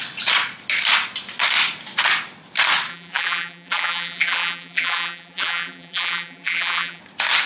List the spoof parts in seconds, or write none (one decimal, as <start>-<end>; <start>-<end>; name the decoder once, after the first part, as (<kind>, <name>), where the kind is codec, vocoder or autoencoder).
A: 2.9-7.0 (vocoder, BigVGAN v2)

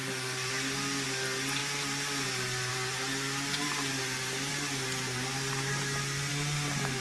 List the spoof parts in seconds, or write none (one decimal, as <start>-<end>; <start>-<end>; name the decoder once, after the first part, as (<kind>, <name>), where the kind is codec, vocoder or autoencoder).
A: 0.5-4.5 (vocoder, BigVGAN v2); 6.3-7.0

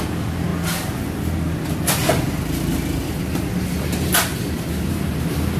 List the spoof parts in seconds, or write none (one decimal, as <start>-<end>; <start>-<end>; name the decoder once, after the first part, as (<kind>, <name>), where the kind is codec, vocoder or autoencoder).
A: 4.3-5.6 (vocoder, BigVGAN v2)

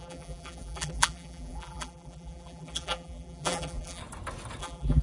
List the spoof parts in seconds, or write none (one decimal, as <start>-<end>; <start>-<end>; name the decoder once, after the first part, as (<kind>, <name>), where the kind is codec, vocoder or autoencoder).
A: 0.0-4.0 (vocoder, BigVGAN v2); 4.6-5.0

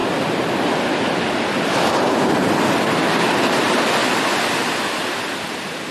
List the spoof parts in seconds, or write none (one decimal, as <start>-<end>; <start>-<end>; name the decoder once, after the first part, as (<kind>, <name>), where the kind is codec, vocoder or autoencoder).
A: 0.0-2.5 (vocoder, BigVGAN v2); 4.0-5.9